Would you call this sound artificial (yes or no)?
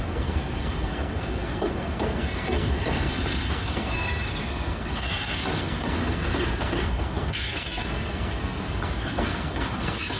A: yes